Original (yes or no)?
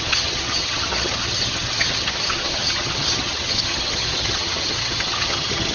no